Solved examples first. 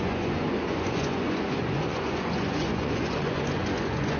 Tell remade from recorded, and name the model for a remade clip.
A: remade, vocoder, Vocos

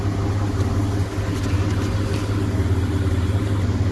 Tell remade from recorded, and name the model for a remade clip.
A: recorded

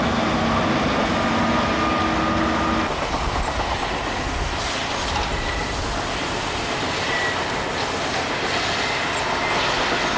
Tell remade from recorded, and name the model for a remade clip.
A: recorded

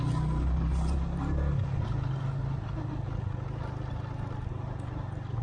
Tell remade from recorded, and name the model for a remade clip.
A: recorded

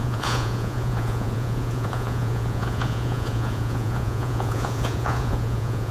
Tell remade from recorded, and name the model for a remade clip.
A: remade, vocoder, Vocos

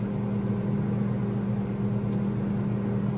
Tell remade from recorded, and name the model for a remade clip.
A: recorded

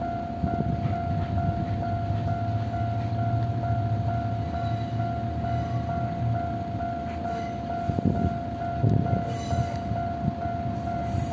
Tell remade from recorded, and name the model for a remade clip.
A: recorded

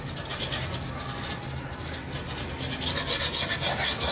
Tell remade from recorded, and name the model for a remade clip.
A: recorded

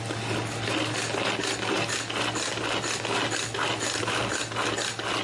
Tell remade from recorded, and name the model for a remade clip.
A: recorded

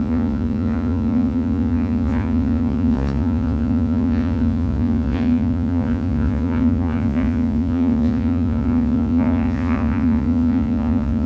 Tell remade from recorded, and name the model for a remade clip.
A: remade, vocoder, Vocos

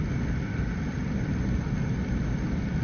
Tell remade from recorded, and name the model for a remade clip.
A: recorded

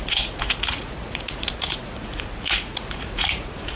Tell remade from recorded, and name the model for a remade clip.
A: remade, vocoder, Vocos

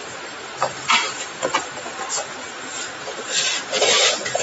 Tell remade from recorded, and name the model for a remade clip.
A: recorded